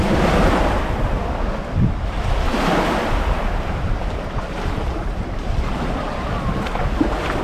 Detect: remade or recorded recorded